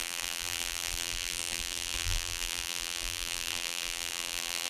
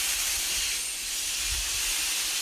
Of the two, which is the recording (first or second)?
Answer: second